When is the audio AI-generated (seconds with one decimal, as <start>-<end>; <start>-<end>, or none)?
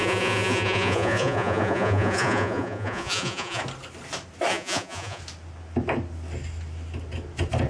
0.0-3.6; 4.5-5.2